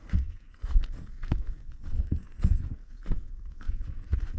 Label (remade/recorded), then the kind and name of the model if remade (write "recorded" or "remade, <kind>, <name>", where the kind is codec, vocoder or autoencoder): remade, codec, SNAC